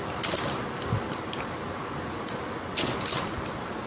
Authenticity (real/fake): real